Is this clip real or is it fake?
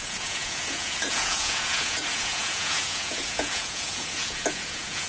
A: fake